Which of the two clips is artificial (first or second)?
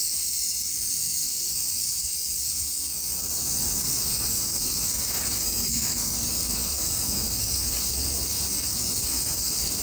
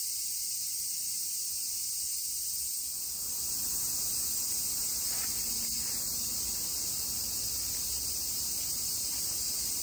first